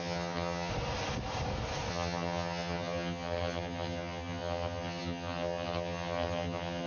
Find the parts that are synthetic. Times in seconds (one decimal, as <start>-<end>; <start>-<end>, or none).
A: 0.0-0.7; 1.9-6.9